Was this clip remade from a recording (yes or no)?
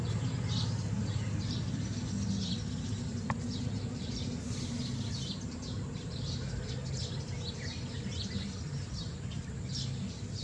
no